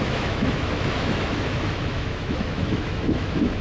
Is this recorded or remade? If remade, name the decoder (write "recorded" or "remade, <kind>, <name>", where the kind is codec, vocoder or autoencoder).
remade, autoencoder, DAC-VAE